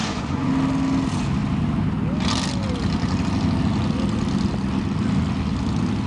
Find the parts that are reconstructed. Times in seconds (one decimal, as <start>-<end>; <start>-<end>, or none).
0.0-0.5